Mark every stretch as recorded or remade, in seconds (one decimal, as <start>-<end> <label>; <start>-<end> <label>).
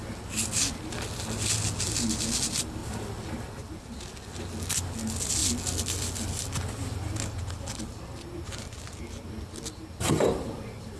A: 0.0-11.0 recorded